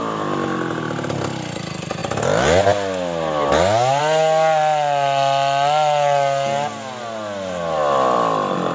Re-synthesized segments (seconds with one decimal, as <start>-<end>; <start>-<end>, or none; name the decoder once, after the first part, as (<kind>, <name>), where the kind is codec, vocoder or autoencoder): none